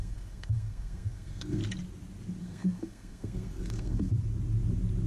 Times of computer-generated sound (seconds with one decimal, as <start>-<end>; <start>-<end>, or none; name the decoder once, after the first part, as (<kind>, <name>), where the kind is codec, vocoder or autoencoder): 0.0-1.6 (codec, SNAC); 2.4-4.1